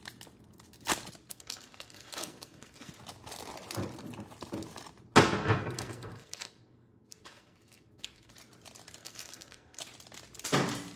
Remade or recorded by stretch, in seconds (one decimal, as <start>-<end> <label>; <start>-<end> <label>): 0.0-1.3 recorded; 1.3-2.9 remade; 2.9-5.4 recorded; 5.4-8.3 remade; 8.3-9.0 recorded; 9.0-9.8 remade; 9.8-11.0 recorded